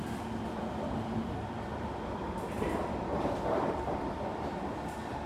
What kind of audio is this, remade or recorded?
remade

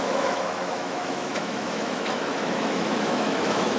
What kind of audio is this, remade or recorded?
remade